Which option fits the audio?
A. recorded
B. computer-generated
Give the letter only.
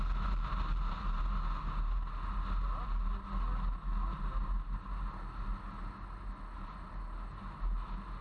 A